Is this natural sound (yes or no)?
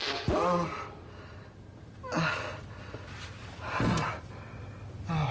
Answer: yes